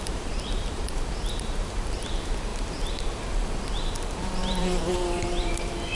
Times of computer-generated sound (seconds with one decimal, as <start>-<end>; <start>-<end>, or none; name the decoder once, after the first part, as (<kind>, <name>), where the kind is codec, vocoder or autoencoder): 0.0-5.9 (vocoder, BigVGAN v2)